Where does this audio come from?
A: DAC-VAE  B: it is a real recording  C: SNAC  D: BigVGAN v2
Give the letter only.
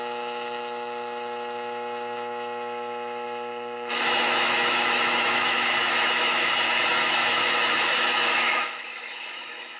A